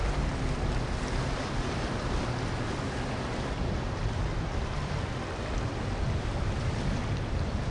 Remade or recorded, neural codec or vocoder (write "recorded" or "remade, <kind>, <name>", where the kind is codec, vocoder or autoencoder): recorded